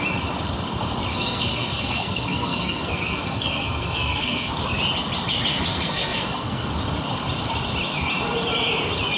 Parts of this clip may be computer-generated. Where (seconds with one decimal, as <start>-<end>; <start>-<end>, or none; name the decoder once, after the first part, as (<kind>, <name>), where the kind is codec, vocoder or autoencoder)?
1.1-4.5 (codec, SNAC); 5.5-6.7